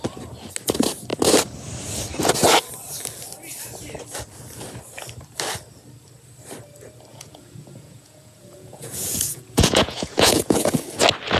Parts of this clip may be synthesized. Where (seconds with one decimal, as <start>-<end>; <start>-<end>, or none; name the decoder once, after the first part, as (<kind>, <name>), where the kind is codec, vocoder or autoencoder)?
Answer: 7.1-10.8 (vocoder, Vocos)